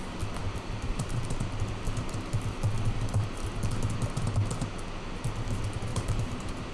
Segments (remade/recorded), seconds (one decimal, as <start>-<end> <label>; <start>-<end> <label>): 0.0-0.4 recorded; 0.4-1.2 remade; 1.2-5.9 recorded; 5.9-6.7 remade